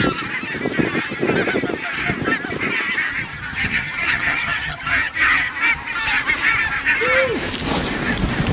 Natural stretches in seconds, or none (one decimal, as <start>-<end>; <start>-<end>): 0.0-3.3; 5.5-8.5